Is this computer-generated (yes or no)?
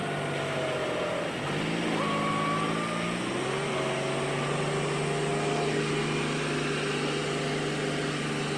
no